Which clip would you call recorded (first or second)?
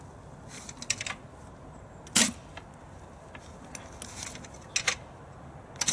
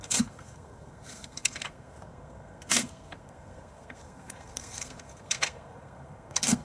first